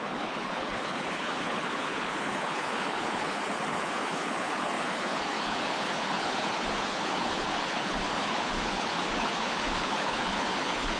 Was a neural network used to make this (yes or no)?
yes